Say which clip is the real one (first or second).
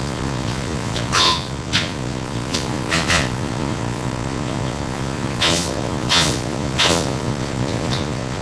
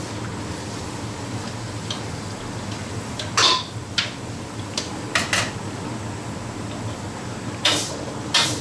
second